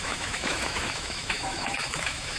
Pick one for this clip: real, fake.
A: fake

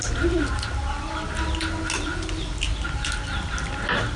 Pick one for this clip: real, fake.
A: real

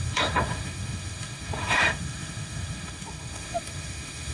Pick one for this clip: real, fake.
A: fake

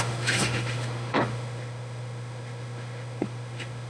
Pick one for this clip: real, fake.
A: fake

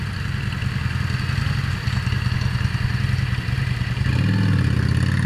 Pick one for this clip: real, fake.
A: real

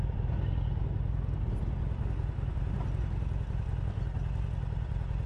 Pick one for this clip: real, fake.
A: real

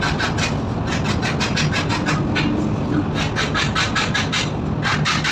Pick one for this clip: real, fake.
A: real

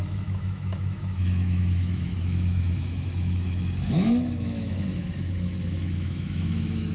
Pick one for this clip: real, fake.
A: fake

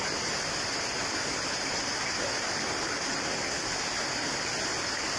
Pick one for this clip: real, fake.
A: real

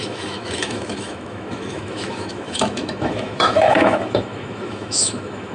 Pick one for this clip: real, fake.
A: fake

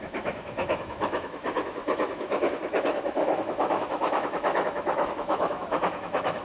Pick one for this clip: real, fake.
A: fake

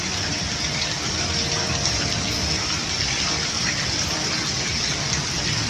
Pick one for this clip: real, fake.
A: real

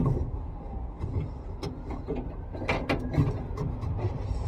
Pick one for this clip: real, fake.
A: real